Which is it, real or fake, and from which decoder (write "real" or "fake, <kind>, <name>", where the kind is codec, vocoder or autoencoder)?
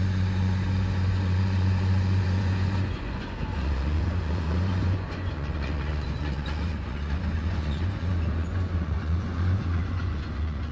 fake, vocoder, Vocos